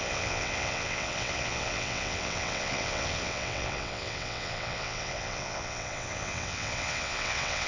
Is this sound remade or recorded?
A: remade